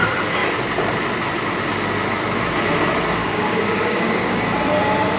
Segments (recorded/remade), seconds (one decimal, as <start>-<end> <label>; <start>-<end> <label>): 0.0-3.2 recorded; 3.2-4.4 remade; 4.4-5.2 recorded